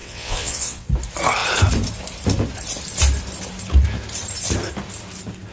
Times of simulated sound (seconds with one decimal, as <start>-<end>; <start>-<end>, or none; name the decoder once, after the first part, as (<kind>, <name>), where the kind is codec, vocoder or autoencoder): 0.0-0.9 (vocoder, WaveNeXt)